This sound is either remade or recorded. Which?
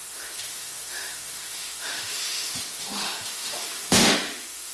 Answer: remade